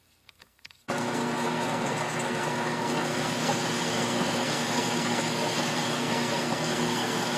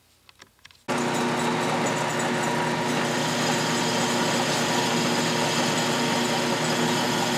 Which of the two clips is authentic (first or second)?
second